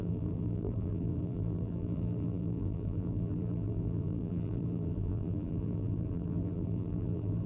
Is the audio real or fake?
fake